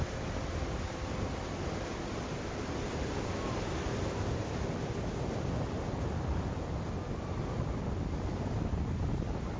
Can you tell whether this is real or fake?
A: real